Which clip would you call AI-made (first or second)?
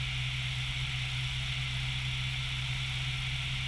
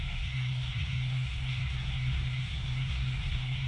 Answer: second